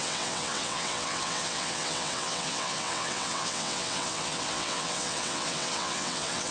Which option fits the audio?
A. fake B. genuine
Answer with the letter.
A